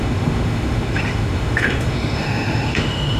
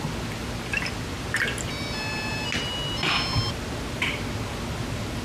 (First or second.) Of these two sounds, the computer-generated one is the first